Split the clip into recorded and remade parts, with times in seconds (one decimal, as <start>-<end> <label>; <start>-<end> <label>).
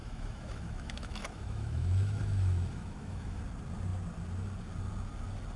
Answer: 0.0-3.4 remade; 3.4-5.6 recorded